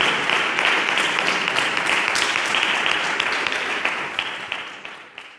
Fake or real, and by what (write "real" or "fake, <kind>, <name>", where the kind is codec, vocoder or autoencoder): real